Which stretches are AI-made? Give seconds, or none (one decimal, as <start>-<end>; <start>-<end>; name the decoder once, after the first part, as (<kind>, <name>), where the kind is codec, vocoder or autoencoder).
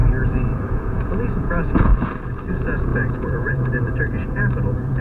0.7-1.9 (vocoder, Vocos); 2.5-5.0